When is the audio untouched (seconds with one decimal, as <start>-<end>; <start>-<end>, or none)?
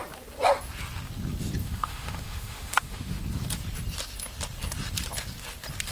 0.0-1.6; 3.2-5.9